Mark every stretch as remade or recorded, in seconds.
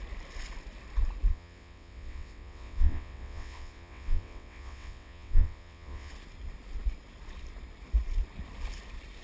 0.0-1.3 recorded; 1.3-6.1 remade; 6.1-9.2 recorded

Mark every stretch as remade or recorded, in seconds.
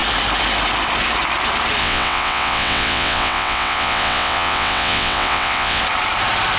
0.0-1.8 recorded; 1.8-5.8 remade; 5.8-6.6 recorded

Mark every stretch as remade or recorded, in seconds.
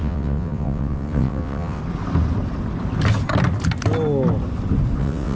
0.0-1.8 remade; 1.8-5.0 recorded; 5.0-5.4 remade